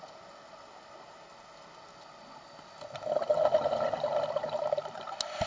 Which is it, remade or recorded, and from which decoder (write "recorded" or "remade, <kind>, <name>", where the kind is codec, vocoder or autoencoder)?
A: recorded